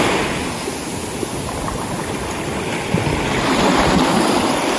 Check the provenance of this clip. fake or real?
real